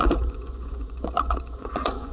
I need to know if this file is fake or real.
fake